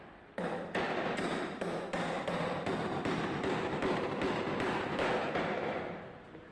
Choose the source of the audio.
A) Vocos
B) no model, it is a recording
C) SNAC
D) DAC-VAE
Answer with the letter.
B